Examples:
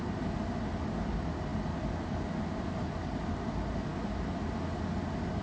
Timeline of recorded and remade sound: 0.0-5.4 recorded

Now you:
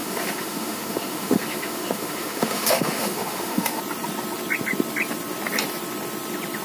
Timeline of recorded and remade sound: 0.0-3.8 remade; 3.8-6.6 recorded